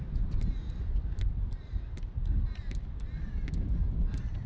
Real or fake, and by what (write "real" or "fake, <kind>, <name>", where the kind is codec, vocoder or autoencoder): real